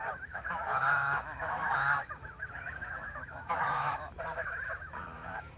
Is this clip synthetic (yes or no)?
yes